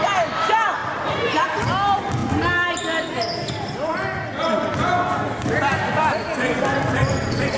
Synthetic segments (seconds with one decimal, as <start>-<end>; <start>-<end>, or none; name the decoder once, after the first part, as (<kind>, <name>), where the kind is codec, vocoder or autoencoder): none